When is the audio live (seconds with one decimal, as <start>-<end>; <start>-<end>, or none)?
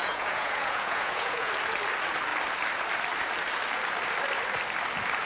1.5-5.3